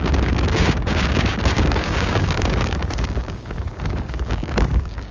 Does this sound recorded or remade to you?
remade